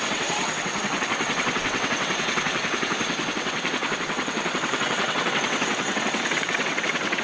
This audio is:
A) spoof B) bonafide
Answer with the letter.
A